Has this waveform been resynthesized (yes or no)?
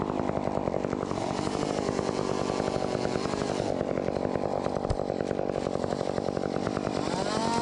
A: no